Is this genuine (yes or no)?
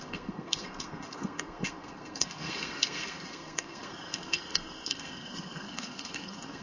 no